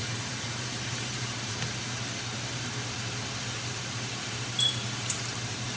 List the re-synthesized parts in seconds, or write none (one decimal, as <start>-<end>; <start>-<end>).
0.0-1.5; 4.3-5.8